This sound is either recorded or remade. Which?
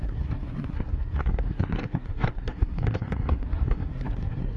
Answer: remade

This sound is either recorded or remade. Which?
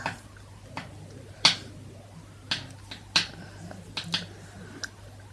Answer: recorded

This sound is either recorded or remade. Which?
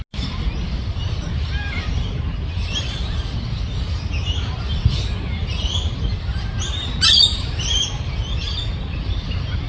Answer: recorded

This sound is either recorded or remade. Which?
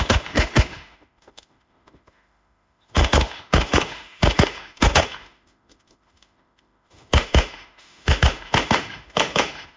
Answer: remade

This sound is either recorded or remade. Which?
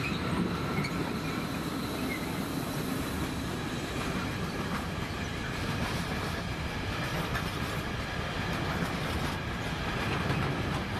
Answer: recorded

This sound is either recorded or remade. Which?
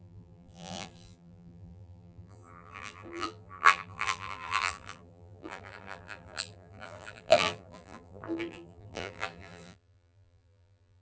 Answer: remade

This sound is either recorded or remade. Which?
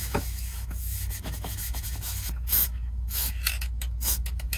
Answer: remade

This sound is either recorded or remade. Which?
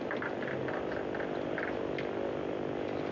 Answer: recorded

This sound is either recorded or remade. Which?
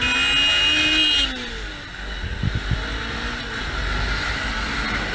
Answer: recorded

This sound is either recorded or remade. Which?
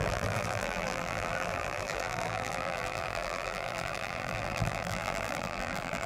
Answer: remade